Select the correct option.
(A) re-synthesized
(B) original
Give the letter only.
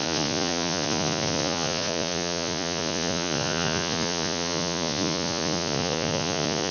A